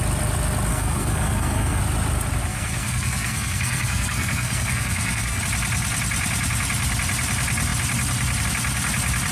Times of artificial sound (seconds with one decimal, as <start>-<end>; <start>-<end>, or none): 0.7-1.8; 2.5-5.4